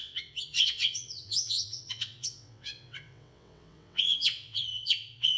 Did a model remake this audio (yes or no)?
yes